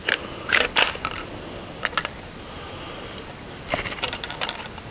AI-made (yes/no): no